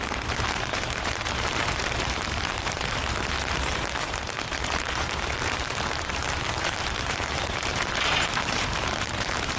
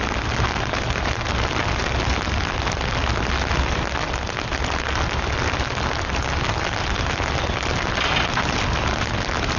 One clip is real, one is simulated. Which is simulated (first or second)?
first